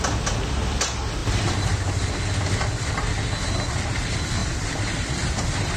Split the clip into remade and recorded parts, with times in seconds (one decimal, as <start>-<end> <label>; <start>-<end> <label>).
0.0-1.2 recorded; 1.2-2.2 remade; 2.2-4.4 recorded; 4.4-5.8 remade